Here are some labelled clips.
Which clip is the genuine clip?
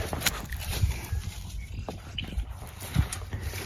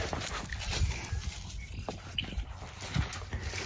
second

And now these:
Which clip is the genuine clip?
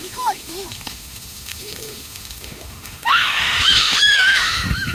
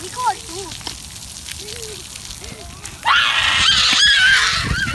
second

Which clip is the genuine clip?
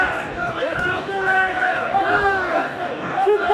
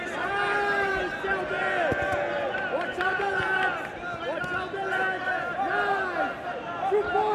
second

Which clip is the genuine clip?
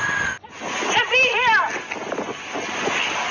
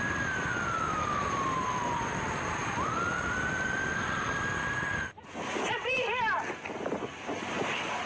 first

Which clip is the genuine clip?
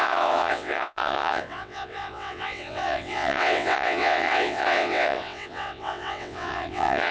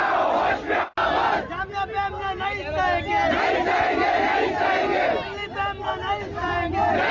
second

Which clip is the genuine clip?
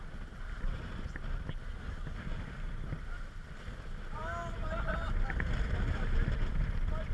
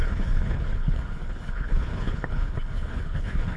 first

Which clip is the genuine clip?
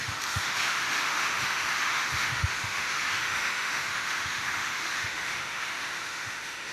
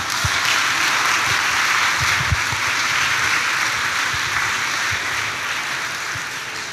second